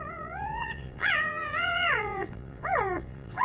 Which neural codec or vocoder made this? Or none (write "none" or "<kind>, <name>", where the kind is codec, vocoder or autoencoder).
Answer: vocoder, WaveNeXt